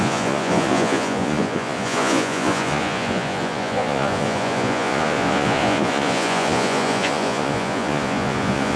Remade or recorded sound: remade